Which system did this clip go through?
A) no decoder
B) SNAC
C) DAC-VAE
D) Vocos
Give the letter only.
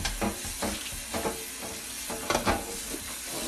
A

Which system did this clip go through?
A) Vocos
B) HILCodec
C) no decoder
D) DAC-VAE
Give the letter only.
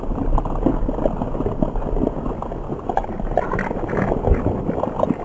C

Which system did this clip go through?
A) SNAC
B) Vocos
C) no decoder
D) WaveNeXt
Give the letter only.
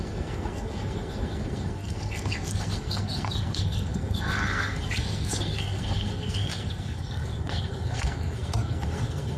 A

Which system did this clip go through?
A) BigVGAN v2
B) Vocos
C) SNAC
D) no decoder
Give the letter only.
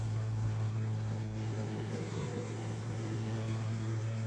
C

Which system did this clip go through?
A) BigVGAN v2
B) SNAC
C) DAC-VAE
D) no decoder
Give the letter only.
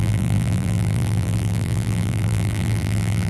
A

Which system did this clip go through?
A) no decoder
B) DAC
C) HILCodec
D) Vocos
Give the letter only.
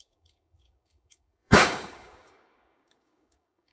B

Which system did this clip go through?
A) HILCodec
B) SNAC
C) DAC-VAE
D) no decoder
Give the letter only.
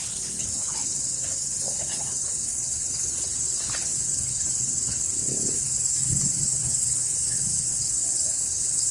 A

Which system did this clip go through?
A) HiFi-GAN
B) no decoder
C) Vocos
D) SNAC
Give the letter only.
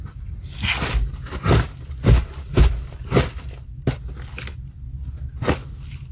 B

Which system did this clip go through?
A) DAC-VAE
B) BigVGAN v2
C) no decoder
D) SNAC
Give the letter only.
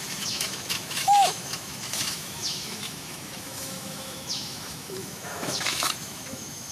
A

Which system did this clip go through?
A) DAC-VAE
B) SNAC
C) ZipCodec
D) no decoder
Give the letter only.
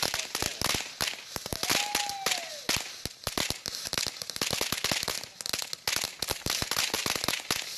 D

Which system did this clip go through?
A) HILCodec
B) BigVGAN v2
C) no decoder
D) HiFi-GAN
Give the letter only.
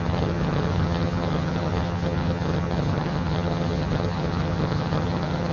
D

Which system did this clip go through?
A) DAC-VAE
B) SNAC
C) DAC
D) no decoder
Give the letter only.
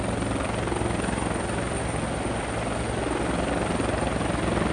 D